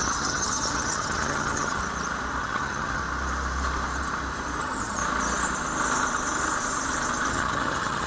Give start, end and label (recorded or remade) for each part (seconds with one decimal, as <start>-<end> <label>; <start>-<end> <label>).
0.0-1.8 remade; 1.8-2.4 recorded; 2.4-3.0 remade; 3.0-4.6 recorded; 4.6-5.0 remade; 5.0-7.3 recorded; 7.3-8.1 remade